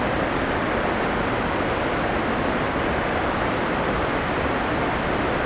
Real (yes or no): yes